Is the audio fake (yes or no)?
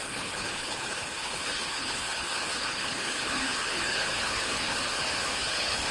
yes